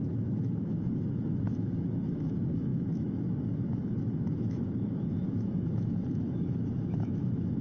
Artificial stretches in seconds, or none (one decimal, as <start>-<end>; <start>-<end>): 0.0-7.6